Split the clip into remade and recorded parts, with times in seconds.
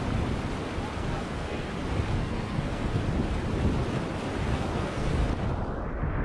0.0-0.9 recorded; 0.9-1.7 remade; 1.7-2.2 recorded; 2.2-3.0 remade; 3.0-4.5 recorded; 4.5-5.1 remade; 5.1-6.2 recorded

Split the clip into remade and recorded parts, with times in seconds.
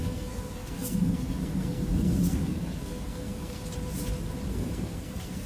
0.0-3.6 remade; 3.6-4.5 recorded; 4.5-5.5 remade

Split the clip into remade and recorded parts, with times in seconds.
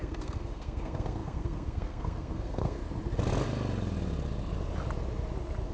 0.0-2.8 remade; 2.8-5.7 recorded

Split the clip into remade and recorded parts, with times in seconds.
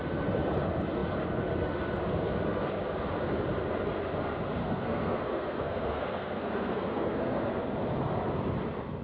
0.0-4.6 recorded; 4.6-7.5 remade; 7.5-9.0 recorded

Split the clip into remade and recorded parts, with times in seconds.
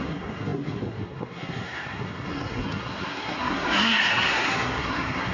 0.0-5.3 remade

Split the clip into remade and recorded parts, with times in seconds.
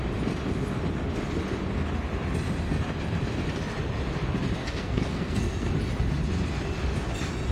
0.0-4.6 recorded; 4.6-5.7 remade; 5.7-7.5 recorded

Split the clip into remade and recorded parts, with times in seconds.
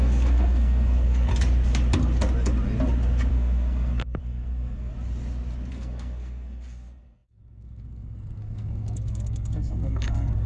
0.0-1.3 remade; 1.3-3.3 recorded; 3.3-4.9 remade; 4.9-5.7 recorded; 5.7-10.5 remade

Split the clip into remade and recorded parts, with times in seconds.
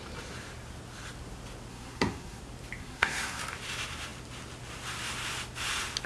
0.0-1.7 recorded; 1.7-2.4 remade; 2.4-2.8 recorded; 2.8-3.4 remade; 3.4-6.1 recorded